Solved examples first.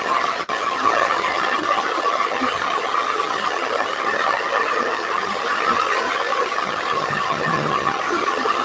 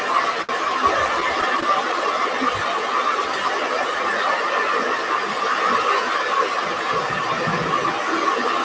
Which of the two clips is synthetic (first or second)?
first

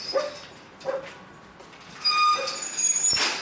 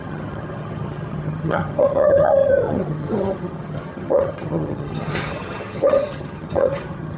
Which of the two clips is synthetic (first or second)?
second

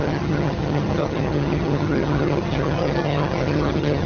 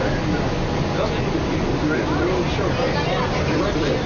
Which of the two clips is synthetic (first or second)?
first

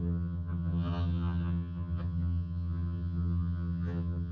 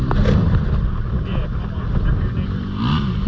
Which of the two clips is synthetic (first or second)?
first